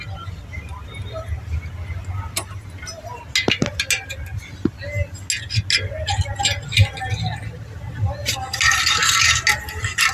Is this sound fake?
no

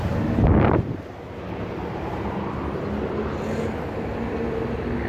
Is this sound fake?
no